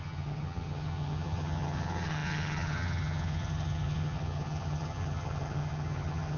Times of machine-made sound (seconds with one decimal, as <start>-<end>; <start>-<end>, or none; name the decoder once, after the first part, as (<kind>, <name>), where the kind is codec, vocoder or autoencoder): 0.0-6.4 (vocoder, HiFi-GAN)